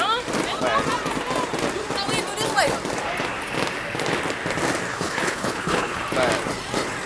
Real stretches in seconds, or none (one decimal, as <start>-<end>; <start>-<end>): 0.0-4.9; 6.0-7.1